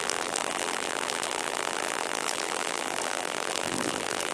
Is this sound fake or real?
fake